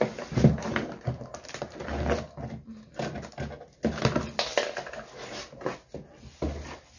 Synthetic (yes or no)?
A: no